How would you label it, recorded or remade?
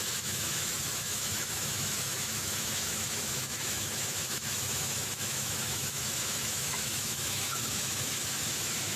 remade